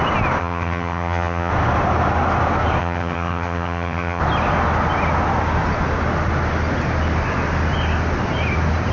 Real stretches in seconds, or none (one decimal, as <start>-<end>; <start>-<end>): 0.0-0.4; 1.5-2.8; 4.2-8.9